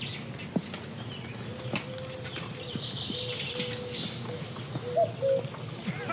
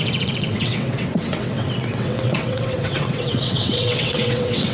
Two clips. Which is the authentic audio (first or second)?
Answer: first